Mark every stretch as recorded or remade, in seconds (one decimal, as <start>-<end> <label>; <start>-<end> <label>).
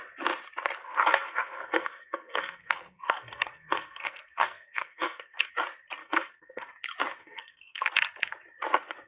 0.0-0.8 recorded; 0.8-5.5 remade; 5.5-6.0 recorded; 6.0-6.7 remade; 6.7-7.2 recorded; 7.2-7.8 remade; 7.8-9.1 recorded